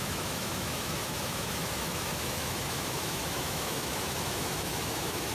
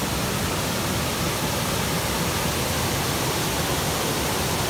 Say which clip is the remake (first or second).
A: first